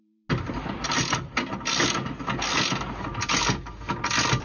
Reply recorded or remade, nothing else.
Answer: recorded